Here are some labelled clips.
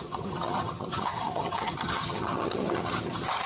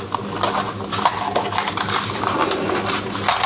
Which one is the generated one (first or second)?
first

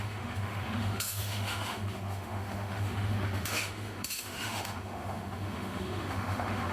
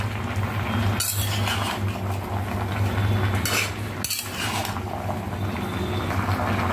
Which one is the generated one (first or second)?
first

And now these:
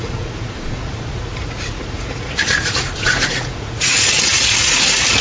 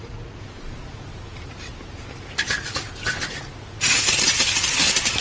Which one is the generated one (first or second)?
first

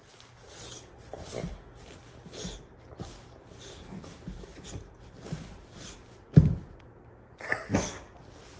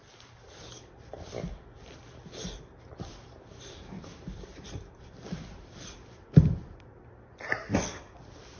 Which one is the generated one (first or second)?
second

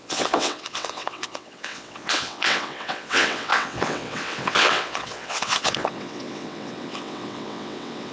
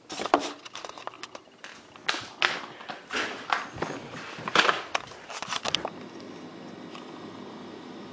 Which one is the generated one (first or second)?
first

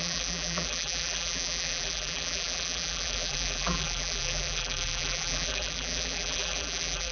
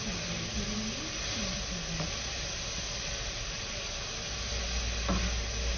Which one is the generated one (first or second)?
first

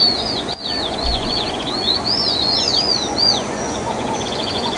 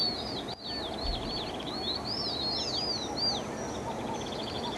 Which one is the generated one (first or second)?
first